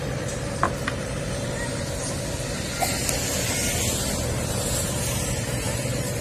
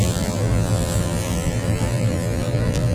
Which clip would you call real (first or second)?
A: first